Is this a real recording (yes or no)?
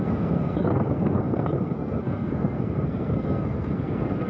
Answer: no